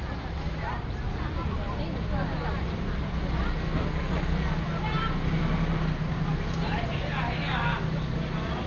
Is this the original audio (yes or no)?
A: yes